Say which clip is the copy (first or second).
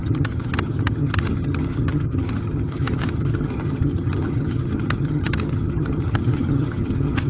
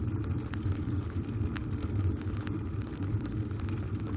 first